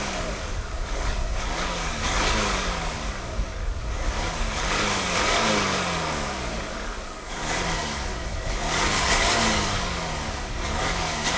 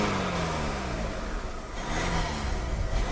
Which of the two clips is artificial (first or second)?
first